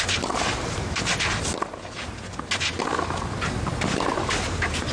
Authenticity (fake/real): real